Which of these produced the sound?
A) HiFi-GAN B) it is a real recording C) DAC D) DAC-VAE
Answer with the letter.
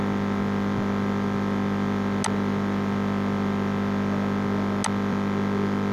B